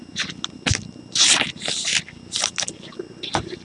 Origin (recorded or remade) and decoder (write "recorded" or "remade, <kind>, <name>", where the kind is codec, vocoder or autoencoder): recorded